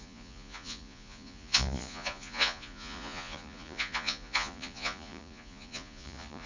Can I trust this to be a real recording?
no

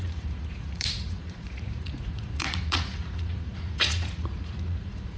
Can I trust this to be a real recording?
no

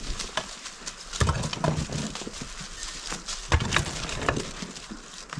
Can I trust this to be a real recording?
yes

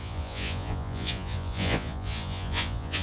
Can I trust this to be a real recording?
no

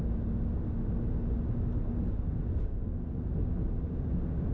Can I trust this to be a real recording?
yes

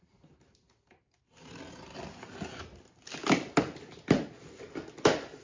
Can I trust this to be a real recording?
yes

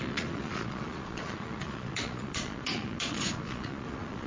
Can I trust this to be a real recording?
no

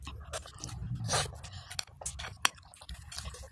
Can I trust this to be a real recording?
yes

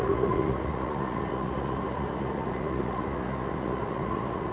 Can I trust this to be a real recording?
no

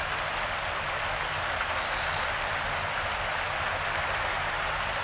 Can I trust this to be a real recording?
yes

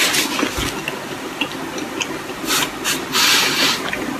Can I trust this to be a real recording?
yes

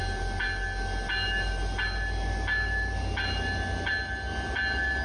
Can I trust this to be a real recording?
yes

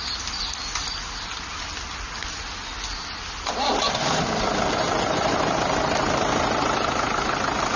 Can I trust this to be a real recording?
yes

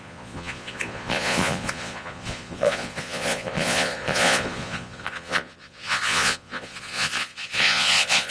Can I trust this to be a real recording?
no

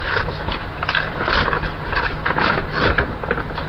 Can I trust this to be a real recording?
yes